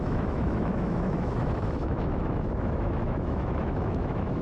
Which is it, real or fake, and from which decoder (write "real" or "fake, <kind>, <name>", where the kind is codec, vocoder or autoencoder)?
fake, autoencoder, DAC-VAE